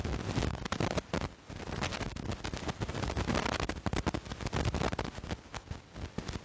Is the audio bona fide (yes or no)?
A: yes